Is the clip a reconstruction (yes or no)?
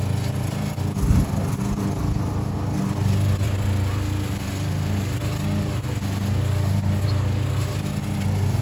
no